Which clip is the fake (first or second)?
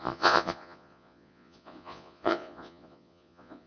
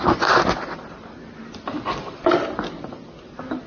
first